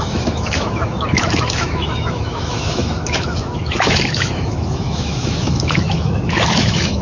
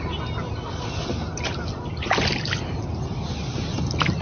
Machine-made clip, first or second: first